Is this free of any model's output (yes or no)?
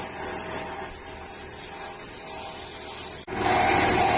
yes